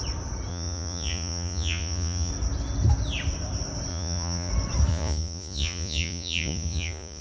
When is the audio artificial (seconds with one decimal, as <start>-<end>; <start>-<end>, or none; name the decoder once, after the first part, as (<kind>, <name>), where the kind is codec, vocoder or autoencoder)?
0.5-2.3 (vocoder, Vocos); 3.9-4.5; 4.9-7.2